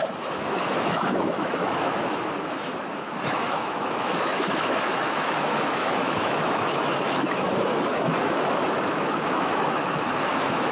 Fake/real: fake